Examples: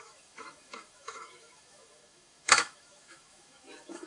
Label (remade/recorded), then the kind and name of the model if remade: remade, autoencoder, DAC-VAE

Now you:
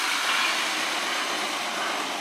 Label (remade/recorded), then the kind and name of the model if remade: recorded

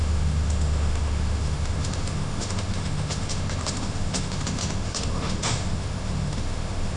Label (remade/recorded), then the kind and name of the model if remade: remade, autoencoder, DAC-VAE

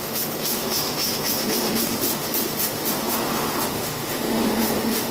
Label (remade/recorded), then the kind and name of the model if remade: remade, autoencoder, DAC-VAE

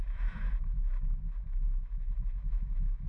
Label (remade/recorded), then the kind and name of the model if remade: remade, autoencoder, DAC-VAE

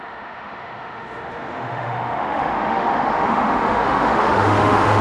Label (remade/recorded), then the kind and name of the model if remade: remade, autoencoder, DAC-VAE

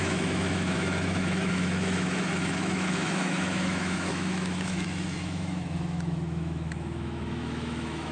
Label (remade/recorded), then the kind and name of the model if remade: remade, autoencoder, DAC-VAE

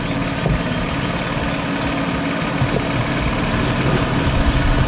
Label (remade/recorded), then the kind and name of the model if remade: recorded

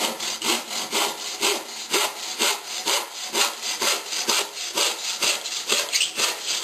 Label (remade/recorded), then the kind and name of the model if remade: recorded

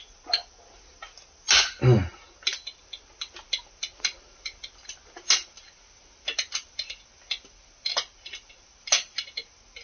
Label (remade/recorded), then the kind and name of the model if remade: recorded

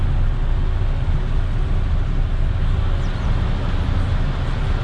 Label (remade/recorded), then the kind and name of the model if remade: recorded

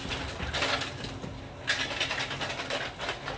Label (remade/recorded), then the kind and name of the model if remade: recorded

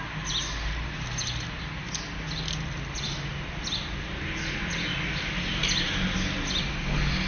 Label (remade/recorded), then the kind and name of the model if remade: recorded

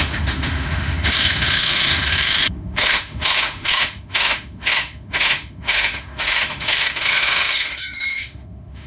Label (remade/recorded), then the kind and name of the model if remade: remade, autoencoder, DAC-VAE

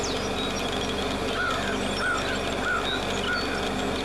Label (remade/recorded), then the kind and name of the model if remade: recorded